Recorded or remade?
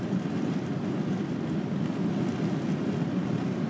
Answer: recorded